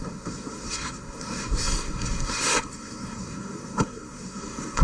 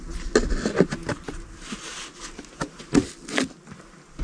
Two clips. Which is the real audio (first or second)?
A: second